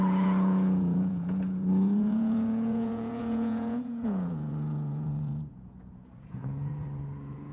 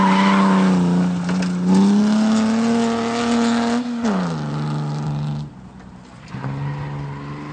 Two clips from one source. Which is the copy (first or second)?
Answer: first